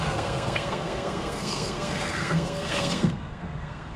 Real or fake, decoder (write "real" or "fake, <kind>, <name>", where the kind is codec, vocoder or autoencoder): fake, codec, SNAC